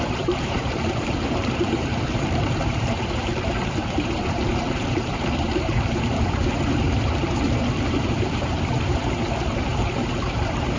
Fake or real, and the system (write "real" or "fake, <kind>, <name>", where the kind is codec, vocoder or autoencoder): fake, vocoder, BigVGAN v2